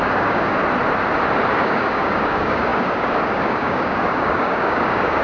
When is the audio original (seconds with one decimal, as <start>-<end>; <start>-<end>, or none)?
0.6-1.5